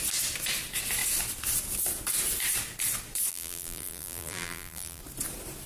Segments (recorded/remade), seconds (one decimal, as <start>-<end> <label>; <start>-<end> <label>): 0.0-3.3 recorded; 3.3-5.0 remade; 5.0-5.7 recorded